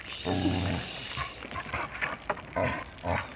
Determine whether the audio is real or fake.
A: fake